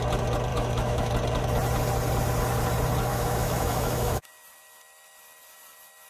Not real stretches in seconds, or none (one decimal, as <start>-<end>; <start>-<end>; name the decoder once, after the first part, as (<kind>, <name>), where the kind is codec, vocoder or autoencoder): 0.5-1.1 (autoencoder, DAC-VAE); 3.1-4.3